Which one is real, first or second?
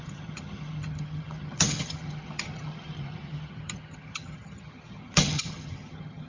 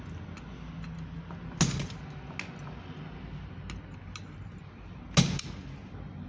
second